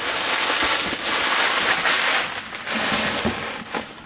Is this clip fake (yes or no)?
no